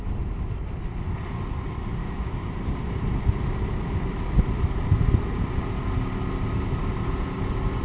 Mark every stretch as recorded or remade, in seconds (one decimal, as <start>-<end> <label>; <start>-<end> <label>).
0.0-2.0 recorded; 2.0-2.5 remade; 2.5-7.8 recorded

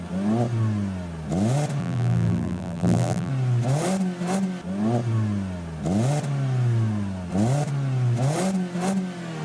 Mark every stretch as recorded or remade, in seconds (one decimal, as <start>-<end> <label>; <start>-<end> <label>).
0.0-1.8 recorded; 1.8-3.3 remade; 3.3-9.4 recorded

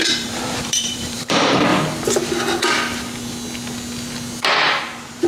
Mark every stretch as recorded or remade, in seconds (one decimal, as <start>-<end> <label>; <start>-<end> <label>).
0.0-1.7 remade; 1.7-4.8 recorded; 4.8-5.3 remade